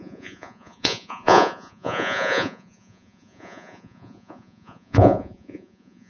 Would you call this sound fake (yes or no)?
yes